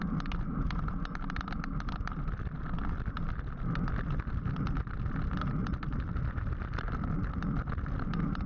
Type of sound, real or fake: real